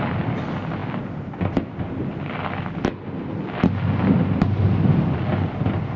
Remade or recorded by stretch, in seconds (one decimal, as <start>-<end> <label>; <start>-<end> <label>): 0.0-6.0 recorded